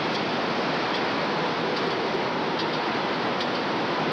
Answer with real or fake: real